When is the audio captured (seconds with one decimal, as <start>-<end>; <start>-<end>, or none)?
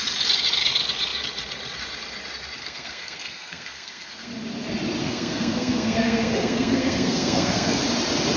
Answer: 0.0-2.6; 4.3-5.0; 7.8-8.4